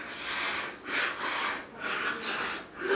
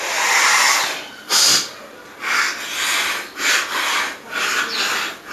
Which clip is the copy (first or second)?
second